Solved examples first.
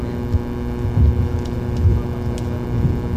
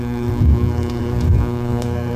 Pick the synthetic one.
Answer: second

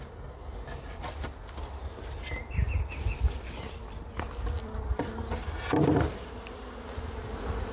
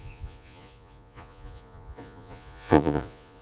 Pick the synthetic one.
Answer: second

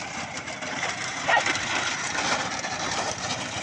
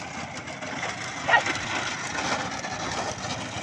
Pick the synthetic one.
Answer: first